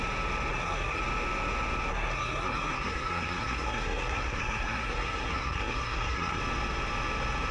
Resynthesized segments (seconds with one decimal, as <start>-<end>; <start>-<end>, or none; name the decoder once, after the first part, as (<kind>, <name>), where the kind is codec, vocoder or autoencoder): 0.5-1.0 (codec, SNAC); 1.9-6.4